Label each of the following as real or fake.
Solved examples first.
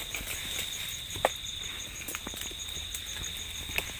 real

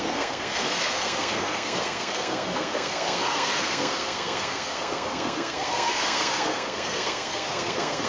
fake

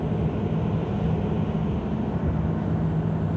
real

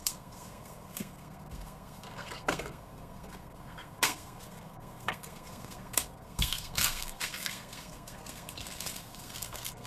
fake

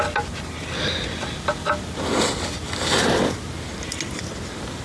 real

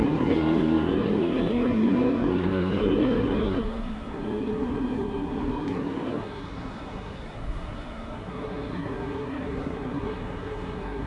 fake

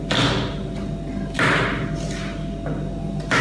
real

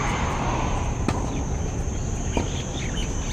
real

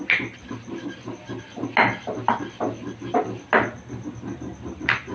real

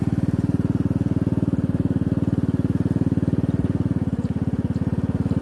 real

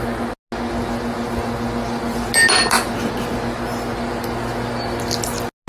real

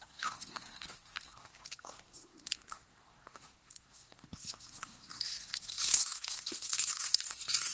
fake